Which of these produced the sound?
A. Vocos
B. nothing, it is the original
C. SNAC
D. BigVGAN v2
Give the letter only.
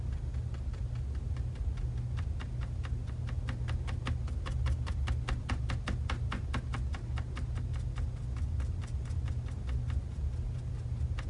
B